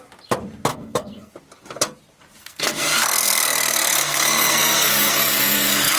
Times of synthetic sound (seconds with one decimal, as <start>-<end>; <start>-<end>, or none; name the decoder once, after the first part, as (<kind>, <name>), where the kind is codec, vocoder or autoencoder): 0.7-1.3 (codec, SNAC); 2.4-6.0